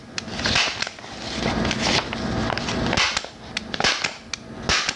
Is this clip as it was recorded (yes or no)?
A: yes